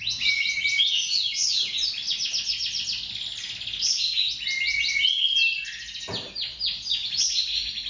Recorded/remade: recorded